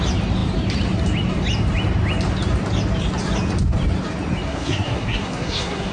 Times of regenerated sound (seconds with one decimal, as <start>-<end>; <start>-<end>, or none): 4.5-5.9